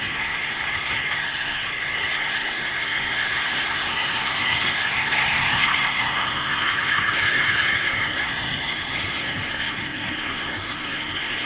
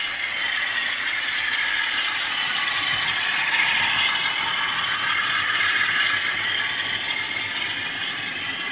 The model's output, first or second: first